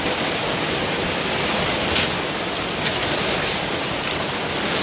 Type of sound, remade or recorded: recorded